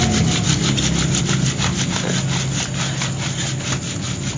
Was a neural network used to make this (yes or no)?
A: no